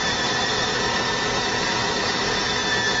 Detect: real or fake real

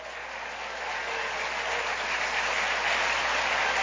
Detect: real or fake real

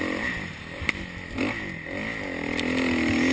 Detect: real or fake real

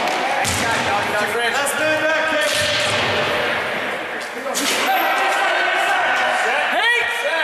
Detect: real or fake real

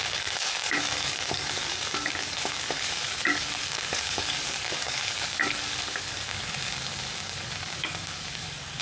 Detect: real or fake fake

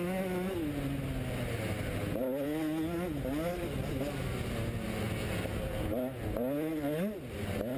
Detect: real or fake real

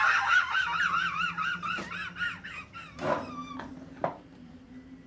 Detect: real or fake real